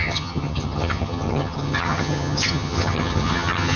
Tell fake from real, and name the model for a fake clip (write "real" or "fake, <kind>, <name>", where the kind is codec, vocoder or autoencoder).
fake, vocoder, HiFi-GAN